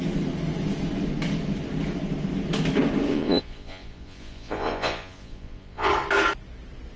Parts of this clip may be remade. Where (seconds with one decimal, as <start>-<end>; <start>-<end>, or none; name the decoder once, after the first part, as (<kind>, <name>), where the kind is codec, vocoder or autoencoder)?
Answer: 3.1-5.9 (vocoder, Vocos)